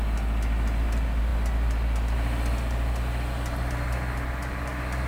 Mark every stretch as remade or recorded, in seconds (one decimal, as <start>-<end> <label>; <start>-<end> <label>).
0.0-5.1 recorded